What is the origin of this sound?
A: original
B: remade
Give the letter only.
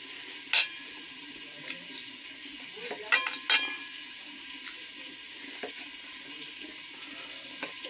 A